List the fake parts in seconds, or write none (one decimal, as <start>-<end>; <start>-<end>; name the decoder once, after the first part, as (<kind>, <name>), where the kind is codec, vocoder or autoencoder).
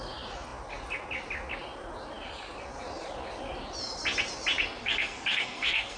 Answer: 4.8-6.0 (codec, SNAC)